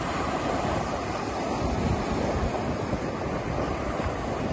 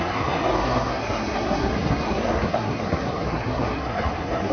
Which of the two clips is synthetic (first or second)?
second